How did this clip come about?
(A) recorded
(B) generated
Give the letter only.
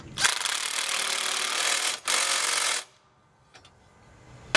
A